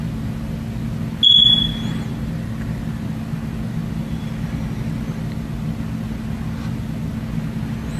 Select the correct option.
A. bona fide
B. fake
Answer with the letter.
A